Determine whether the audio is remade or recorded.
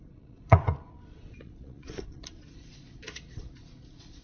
remade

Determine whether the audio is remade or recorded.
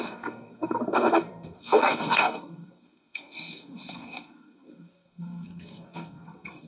remade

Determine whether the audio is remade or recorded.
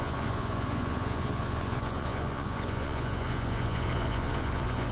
remade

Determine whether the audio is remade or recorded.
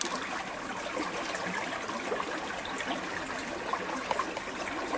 recorded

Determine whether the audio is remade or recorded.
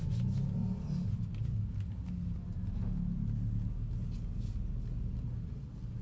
recorded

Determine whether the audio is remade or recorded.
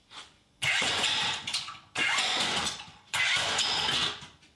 remade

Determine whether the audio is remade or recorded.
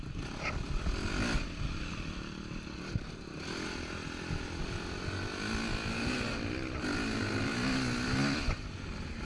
recorded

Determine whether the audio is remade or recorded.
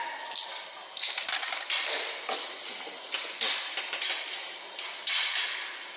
recorded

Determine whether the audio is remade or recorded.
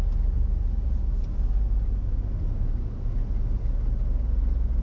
recorded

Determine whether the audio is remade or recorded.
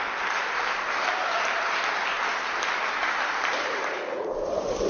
remade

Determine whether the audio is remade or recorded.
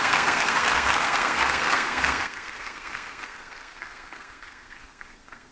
remade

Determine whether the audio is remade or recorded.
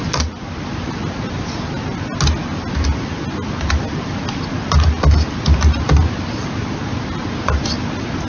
recorded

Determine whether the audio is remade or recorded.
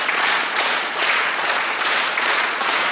remade